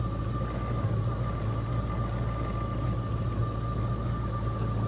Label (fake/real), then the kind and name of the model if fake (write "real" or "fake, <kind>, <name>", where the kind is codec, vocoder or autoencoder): real